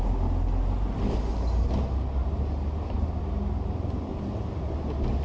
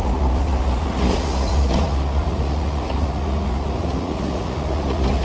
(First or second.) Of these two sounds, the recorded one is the first